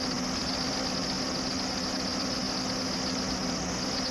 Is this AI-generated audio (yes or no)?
no